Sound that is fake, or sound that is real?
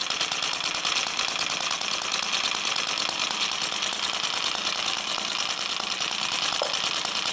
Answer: real